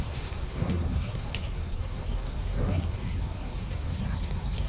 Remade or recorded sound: remade